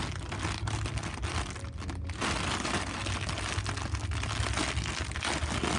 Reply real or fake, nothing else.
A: real